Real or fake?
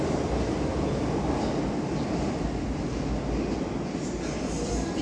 real